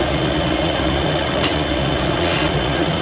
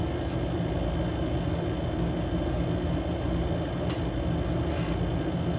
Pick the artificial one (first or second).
first